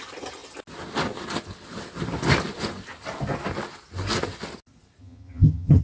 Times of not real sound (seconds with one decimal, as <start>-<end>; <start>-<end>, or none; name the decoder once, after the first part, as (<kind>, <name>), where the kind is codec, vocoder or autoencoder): 5.0-5.8 (vocoder, HiFi-GAN)